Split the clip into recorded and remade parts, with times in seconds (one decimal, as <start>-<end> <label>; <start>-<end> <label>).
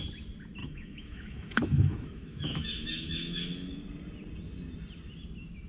0.0-0.6 recorded; 0.6-3.8 remade; 3.8-5.7 recorded